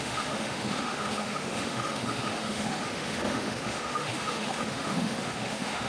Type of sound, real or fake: fake